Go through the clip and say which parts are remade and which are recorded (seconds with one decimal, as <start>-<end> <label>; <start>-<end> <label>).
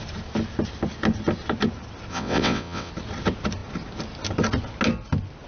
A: 0.0-2.1 recorded; 2.1-2.9 remade; 2.9-5.5 recorded